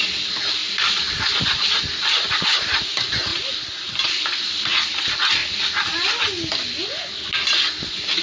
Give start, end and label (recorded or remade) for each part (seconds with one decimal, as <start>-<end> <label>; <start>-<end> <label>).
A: 0.0-0.6 recorded; 0.6-2.9 remade; 2.9-8.2 recorded